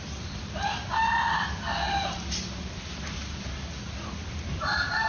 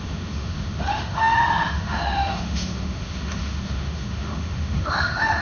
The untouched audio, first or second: first